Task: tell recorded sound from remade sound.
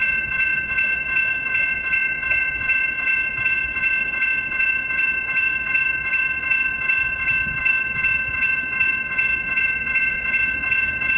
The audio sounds remade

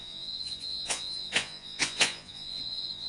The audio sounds remade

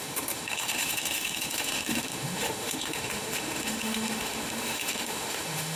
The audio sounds remade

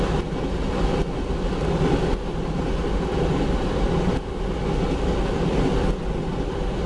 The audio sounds recorded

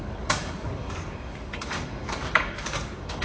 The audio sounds remade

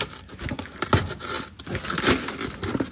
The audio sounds recorded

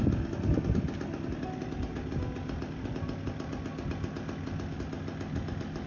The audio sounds recorded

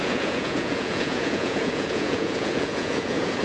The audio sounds remade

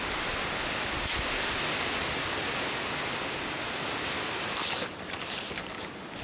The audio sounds recorded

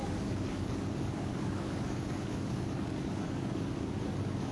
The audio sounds remade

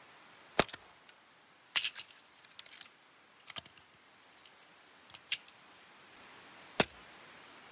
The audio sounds recorded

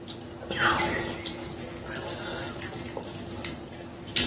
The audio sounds recorded